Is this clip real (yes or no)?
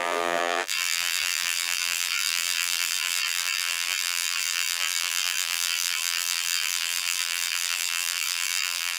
no